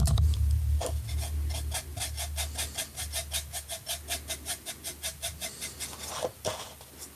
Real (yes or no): yes